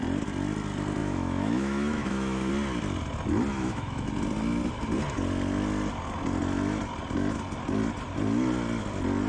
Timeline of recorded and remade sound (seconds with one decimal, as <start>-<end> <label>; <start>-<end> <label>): 0.0-1.0 recorded; 1.0-2.5 remade; 2.5-3.5 recorded; 3.5-4.1 remade; 4.1-9.3 recorded